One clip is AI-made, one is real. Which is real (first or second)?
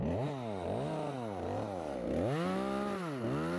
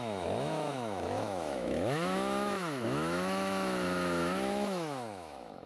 first